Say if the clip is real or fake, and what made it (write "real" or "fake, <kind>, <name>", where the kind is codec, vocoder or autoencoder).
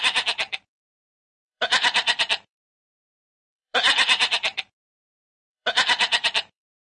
fake, vocoder, BigVGAN v2